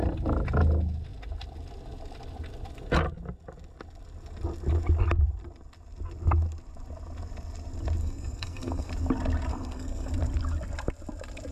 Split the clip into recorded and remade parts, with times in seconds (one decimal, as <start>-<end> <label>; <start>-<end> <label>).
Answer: 0.0-8.0 recorded; 8.0-8.9 remade; 8.9-9.5 recorded; 9.5-10.1 remade; 10.1-11.5 recorded